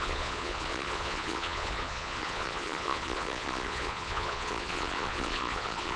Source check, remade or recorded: remade